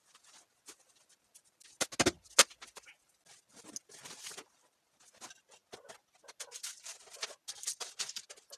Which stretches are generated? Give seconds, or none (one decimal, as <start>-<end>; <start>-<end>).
none